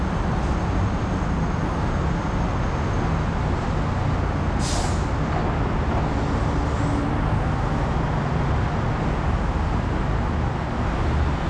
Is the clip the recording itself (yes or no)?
yes